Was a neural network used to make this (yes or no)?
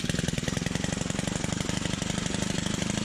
no